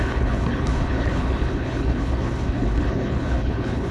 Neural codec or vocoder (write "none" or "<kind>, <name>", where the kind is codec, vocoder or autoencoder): codec, HILCodec